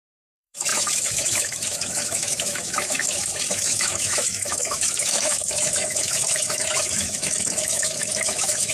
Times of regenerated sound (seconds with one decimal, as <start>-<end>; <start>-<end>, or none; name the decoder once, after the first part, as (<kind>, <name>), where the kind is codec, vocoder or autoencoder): 0.0-8.7 (autoencoder, DAC-VAE)